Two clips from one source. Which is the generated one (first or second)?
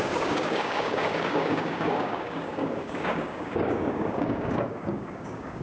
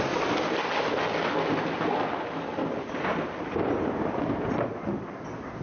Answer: first